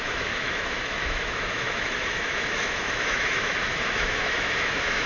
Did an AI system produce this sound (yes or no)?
yes